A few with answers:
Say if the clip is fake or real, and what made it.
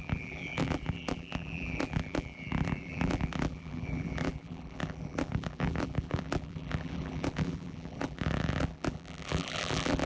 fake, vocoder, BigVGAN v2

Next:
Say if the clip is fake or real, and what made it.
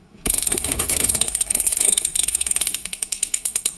fake, codec, SNAC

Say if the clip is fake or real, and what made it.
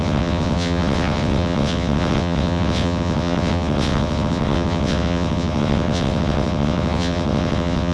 fake, vocoder, WaveNeXt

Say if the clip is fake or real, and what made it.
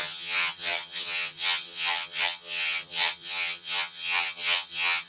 fake, vocoder, HiFi-GAN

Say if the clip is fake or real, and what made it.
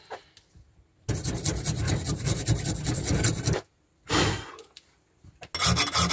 real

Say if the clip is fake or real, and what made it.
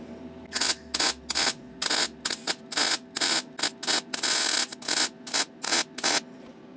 real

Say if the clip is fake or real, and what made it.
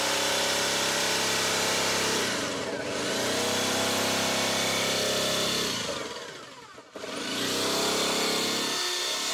real